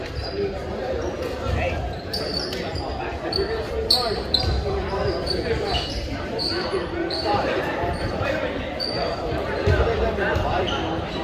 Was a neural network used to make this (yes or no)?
yes